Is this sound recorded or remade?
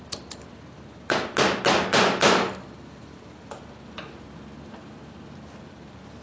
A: recorded